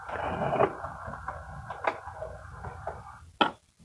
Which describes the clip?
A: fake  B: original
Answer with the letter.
B